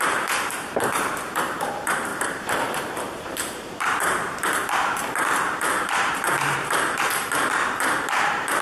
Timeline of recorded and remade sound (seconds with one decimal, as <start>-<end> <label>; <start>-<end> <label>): 0.0-8.6 remade